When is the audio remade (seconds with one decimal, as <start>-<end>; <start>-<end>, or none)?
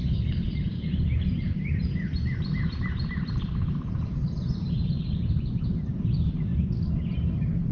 0.0-6.5; 7.3-7.7